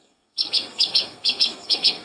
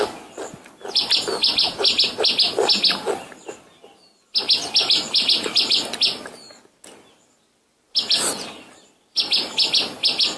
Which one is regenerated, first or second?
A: first